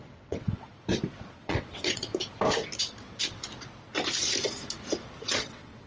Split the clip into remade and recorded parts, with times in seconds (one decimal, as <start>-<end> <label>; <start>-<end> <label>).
0.0-0.7 remade; 0.7-1.3 recorded; 1.3-2.1 remade; 2.1-5.3 recorded; 5.3-5.9 remade